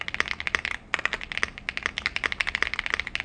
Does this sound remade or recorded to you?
recorded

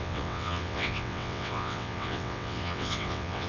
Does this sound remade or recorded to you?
remade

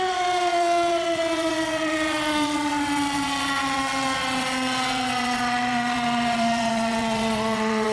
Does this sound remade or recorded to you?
remade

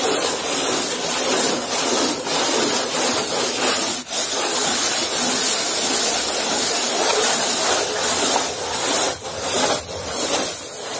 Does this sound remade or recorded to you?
recorded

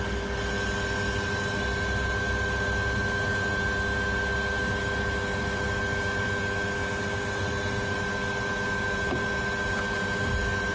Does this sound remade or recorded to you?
recorded